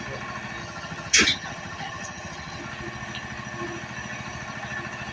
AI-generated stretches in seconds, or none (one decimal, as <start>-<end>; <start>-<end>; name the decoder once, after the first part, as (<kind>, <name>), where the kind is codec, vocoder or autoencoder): 0.6-2.6 (vocoder, HiFi-GAN)